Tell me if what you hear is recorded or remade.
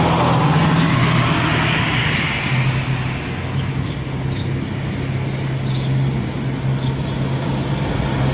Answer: recorded